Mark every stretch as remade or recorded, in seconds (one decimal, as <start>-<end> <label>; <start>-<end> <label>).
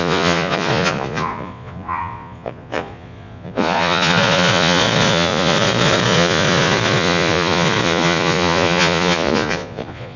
0.0-10.2 remade